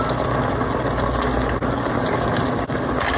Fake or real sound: real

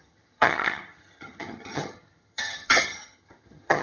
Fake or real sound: fake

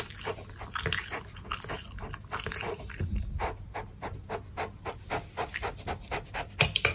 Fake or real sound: real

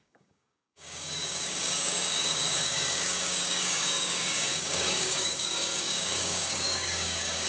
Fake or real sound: fake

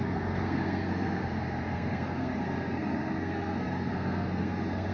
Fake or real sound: fake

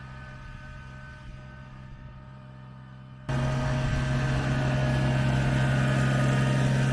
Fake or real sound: real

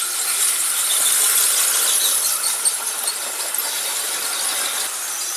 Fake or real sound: real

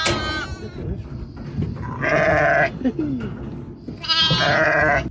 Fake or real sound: real